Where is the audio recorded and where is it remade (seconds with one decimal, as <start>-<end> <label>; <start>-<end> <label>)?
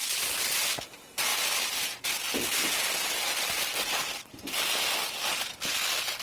0.0-6.2 recorded